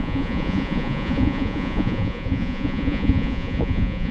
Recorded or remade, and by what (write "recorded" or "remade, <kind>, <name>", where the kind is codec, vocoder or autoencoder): remade, vocoder, Vocos